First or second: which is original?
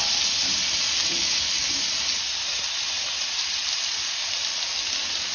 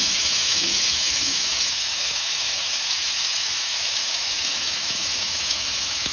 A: first